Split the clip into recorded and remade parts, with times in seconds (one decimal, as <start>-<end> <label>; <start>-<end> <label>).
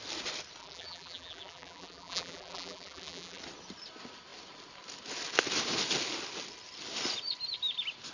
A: 0.0-0.6 recorded; 0.6-3.4 remade; 3.4-8.1 recorded